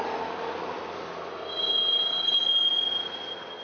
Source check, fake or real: real